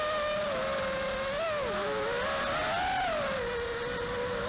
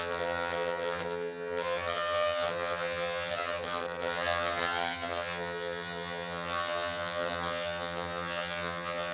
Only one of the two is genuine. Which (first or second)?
first